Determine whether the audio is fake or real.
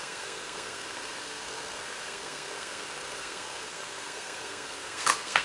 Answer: fake